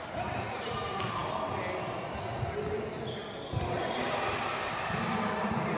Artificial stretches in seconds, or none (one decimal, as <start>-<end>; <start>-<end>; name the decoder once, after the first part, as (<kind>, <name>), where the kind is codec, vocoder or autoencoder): none